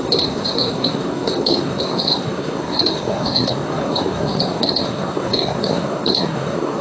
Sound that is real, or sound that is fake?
fake